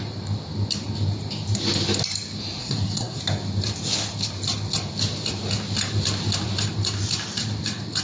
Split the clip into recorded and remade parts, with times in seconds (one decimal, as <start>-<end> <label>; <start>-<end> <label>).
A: 0.0-2.6 recorded; 2.6-3.2 remade; 3.2-8.0 recorded